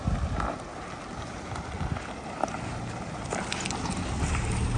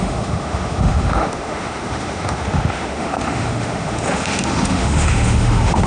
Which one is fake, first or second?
second